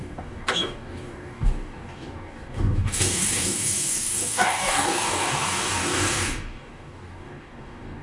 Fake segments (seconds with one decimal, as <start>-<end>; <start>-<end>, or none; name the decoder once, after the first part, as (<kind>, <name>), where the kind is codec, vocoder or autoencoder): 0.0-8.0 (codec, DAC)

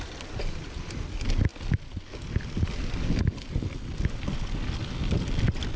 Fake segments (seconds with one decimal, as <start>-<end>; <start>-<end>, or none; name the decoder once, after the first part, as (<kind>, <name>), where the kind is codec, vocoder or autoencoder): none